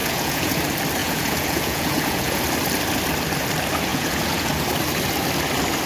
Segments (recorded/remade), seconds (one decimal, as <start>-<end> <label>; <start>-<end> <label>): 0.0-0.6 remade; 0.6-1.0 recorded; 1.0-2.4 remade; 2.4-3.9 recorded; 3.9-4.5 remade; 4.5-5.9 recorded